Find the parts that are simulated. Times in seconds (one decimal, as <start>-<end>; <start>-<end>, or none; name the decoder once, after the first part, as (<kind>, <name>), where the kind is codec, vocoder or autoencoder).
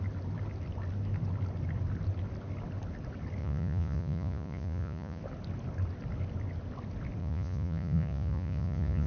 3.4-5.2 (vocoder, Vocos); 7.2-9.1